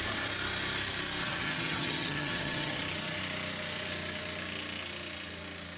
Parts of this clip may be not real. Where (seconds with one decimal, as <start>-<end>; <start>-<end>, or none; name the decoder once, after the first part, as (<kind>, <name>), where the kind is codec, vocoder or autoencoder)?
1.2-2.8 (vocoder, HiFi-GAN)

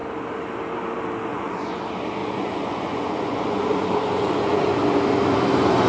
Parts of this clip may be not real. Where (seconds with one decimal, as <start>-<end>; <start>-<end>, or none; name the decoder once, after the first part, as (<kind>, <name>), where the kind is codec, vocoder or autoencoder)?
1.3-1.8 (vocoder, Vocos); 2.2-4.7

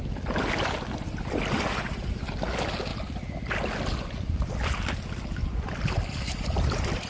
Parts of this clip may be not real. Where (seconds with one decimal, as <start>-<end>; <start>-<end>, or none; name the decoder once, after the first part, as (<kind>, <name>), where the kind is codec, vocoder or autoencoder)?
2.9-4.2 (vocoder, BigVGAN v2); 5.4-6.0

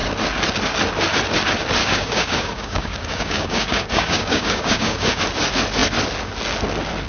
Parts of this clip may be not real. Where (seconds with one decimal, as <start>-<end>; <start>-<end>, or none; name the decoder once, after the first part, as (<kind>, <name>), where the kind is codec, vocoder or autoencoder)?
1.8-5.2 (codec, DAC)

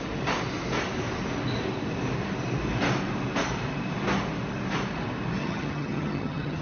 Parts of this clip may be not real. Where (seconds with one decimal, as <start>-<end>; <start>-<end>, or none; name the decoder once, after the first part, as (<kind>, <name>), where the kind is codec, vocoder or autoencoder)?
5.4-6.6 (vocoder, HiFi-GAN)

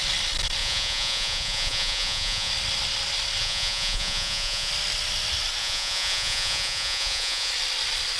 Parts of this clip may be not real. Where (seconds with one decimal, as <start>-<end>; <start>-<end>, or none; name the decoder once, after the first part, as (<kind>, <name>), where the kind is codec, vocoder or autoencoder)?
0.6-2.5 (vocoder, Vocos); 3.4-4.7; 5.6-7.5

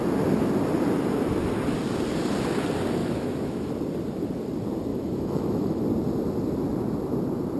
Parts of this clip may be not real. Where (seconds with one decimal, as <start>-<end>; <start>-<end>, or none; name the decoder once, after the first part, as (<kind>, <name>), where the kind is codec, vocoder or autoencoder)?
3.0-3.7 (autoencoder, DAC-VAE); 4.9-5.8

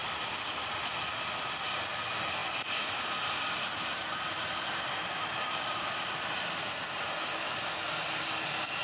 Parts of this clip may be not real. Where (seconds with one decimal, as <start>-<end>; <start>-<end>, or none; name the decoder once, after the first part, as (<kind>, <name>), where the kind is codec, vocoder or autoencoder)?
0.0-0.7 (vocoder, BigVGAN v2)